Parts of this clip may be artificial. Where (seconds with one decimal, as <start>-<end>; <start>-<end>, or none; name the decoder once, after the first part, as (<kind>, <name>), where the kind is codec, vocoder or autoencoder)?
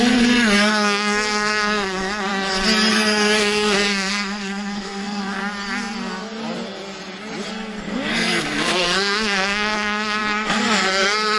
0.0-2.3 (codec, SNAC); 2.9-5.4; 7.5-11.4